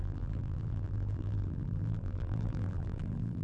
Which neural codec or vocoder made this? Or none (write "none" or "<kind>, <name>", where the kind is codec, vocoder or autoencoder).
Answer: vocoder, BigVGAN v2